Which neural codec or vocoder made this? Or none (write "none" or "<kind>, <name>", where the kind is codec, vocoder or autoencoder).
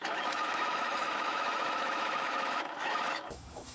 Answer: autoencoder, DAC-VAE